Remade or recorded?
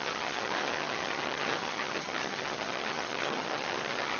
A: remade